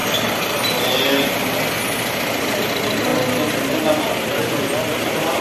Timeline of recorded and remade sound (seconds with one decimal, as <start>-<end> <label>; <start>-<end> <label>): 0.0-5.4 recorded